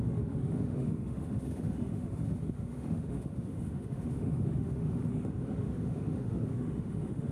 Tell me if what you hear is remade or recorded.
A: remade